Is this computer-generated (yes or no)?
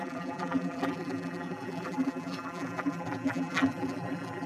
yes